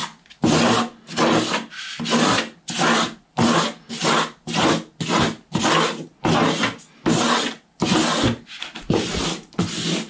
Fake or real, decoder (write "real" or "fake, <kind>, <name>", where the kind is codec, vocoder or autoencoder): real